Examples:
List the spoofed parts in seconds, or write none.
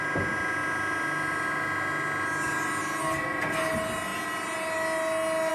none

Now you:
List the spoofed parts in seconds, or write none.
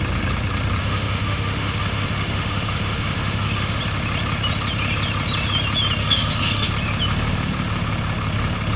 0.8-3.8 (autoencoder, DAC-VAE); 6.0-6.7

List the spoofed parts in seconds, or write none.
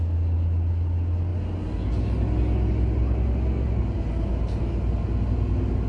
none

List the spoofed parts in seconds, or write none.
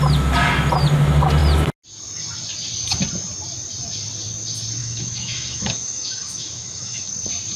4.8-7.1 (autoencoder, DAC-VAE)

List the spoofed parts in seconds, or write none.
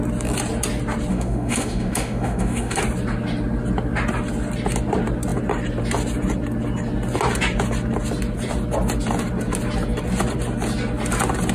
1.1-2.8 (autoencoder, DAC-VAE)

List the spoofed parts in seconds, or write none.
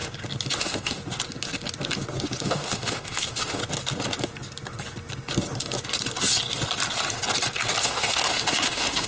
0.6-1.0 (autoencoder, DAC-VAE); 2.4-3.6; 7.8-9.1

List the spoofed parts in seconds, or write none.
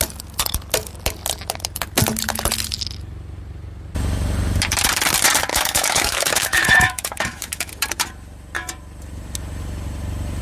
5.5-7.7 (autoencoder, DAC-VAE)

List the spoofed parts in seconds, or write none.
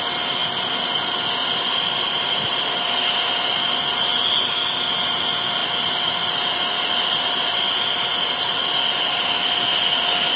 none